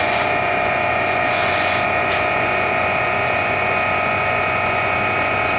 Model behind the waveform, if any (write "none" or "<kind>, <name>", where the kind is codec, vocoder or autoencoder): vocoder, Vocos